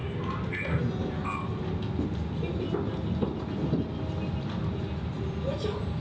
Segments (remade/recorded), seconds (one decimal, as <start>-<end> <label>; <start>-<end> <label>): 0.0-6.0 recorded